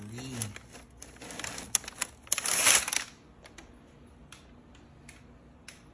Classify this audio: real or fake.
real